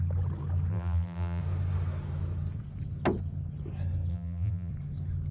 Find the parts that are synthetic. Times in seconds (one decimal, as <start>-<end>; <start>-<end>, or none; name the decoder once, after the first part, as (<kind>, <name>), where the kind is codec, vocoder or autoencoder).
0.7-1.4 (vocoder, BigVGAN v2); 4.1-4.7